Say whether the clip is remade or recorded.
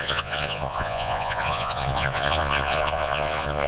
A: remade